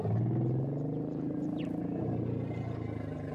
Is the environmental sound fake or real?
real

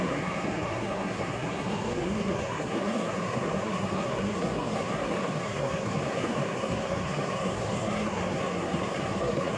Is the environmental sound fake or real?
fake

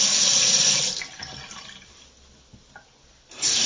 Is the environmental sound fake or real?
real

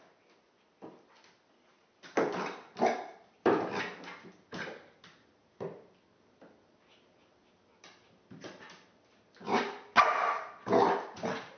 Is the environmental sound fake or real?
real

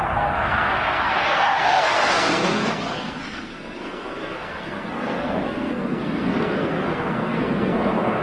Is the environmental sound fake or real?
fake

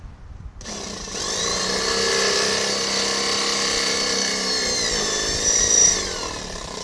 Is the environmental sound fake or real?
real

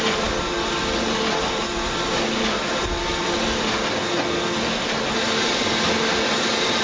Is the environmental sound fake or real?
real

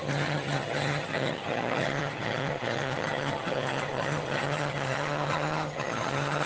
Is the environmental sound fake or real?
fake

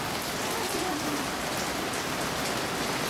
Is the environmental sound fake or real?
real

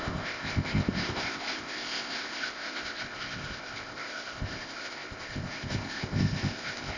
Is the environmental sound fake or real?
fake